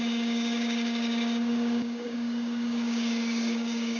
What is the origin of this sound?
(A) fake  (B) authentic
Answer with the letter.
A